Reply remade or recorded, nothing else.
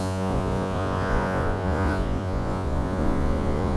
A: remade